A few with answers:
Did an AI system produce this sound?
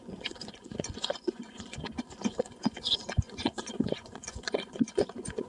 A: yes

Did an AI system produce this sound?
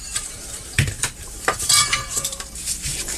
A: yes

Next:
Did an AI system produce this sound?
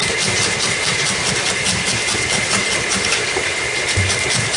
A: no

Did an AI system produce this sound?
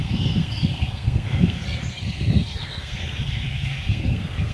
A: yes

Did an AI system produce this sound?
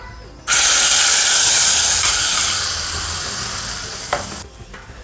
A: no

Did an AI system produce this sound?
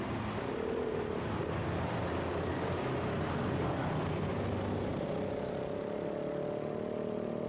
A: no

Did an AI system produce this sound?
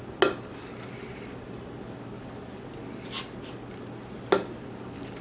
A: no